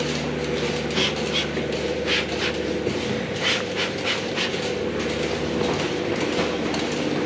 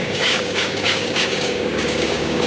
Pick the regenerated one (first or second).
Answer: second